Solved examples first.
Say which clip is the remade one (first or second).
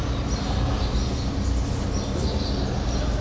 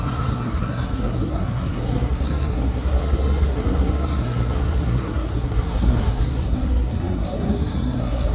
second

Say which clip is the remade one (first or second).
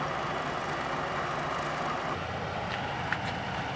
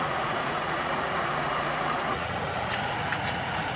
second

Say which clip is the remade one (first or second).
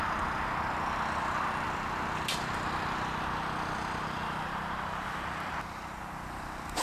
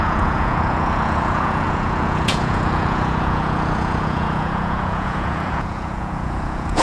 second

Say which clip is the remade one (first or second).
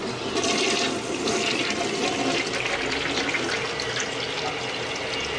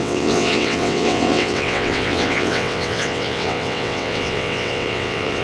second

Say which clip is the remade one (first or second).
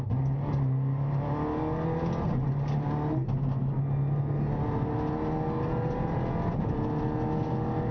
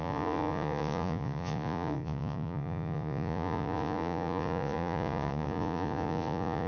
second